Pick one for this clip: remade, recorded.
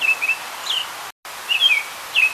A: recorded